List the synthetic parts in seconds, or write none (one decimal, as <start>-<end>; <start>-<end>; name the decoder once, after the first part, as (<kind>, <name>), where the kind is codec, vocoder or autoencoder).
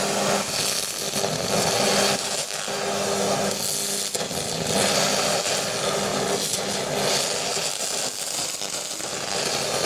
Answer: none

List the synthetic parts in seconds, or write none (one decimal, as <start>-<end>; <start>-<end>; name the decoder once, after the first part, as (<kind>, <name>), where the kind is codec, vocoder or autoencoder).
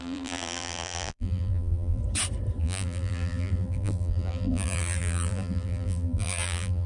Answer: 0.0-2.0 (vocoder, BigVGAN v2); 2.6-6.9